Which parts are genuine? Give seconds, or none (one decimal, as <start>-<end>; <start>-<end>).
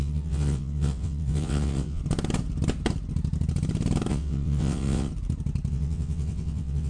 2.0-4.1; 5.1-5.7